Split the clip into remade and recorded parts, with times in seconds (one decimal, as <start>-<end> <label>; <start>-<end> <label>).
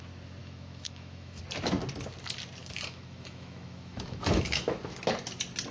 0.0-0.4 recorded; 0.4-1.4 remade; 1.4-2.6 recorded; 2.6-4.8 remade; 4.8-5.7 recorded